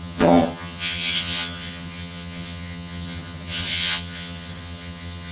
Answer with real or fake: fake